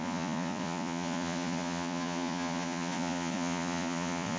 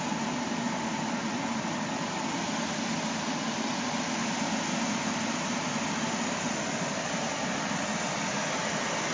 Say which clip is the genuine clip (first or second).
second